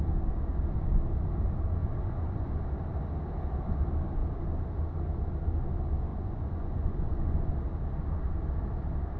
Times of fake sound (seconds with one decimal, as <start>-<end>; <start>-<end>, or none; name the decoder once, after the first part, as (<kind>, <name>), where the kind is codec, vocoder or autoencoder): 1.8-2.6 (vocoder, Vocos); 6.1-7.5